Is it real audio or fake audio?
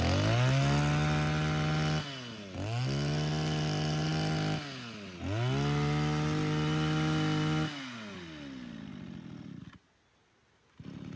real